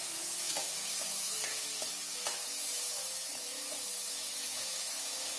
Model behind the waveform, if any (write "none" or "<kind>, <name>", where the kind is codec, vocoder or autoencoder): autoencoder, DAC-VAE